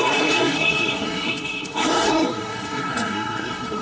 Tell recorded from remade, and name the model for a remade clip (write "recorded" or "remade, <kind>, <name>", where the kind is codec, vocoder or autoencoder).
remade, codec, SNAC